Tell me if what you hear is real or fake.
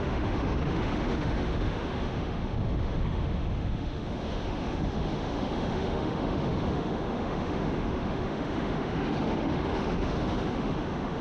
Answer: fake